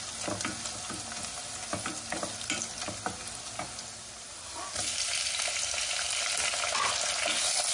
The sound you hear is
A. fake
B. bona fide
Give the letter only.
B